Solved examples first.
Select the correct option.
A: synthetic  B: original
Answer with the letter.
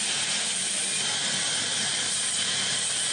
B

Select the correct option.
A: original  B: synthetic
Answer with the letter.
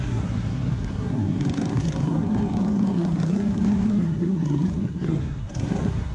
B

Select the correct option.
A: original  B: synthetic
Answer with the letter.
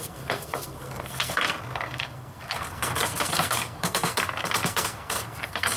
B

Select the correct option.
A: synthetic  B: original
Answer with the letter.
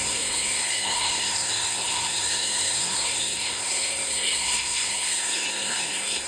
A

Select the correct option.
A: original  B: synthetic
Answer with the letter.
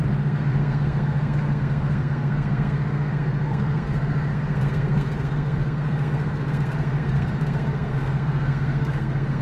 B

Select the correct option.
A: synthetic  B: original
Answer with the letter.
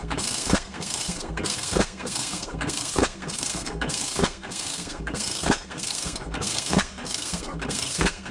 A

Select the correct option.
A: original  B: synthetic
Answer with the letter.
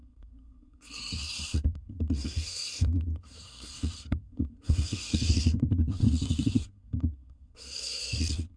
B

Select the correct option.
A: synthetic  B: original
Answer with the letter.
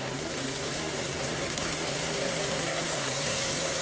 A